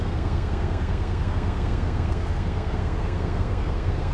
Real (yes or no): no